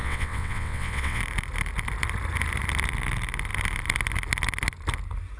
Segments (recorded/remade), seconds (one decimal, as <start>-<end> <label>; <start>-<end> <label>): 0.0-1.2 remade; 1.2-5.4 recorded